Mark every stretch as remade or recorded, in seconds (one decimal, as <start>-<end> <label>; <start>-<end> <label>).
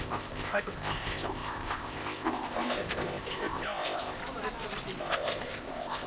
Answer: 0.0-4.2 remade; 4.2-5.0 recorded; 5.0-6.1 remade